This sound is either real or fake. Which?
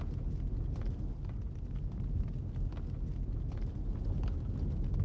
real